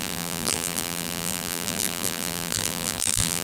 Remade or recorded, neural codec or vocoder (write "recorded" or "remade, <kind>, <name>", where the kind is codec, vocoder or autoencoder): remade, vocoder, BigVGAN v2